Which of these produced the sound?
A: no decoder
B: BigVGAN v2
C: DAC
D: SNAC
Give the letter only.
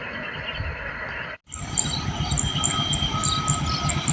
A